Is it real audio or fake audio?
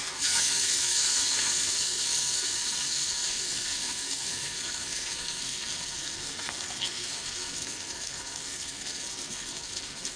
fake